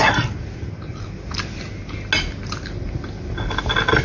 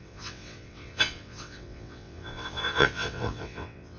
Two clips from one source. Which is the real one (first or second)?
first